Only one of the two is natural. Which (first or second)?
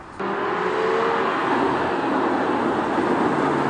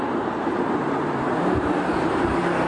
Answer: first